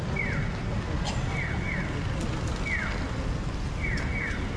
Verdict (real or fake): real